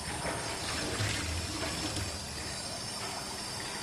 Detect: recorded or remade recorded